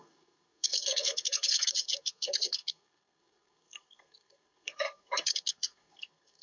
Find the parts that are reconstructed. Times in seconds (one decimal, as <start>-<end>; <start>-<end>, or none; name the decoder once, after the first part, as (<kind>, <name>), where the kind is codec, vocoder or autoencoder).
0.0-6.4 (codec, SNAC)